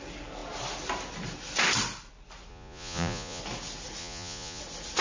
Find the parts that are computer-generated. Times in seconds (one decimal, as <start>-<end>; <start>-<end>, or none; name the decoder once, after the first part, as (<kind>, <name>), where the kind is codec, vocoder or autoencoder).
2.5-3.4 (vocoder, Vocos); 4.0-4.6

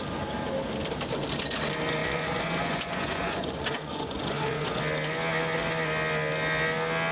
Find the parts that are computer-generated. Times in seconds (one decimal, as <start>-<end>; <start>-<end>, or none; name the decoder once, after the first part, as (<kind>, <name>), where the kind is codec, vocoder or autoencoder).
2.0-4.8 (vocoder, Vocos)

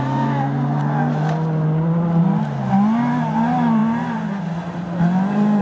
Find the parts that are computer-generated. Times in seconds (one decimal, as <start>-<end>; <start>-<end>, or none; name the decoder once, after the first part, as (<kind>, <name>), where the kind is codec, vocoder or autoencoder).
none